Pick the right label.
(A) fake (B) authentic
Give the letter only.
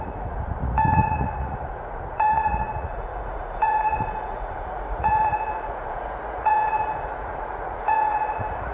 A